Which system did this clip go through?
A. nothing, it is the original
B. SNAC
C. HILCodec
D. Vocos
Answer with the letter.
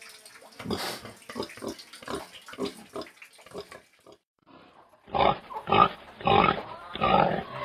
A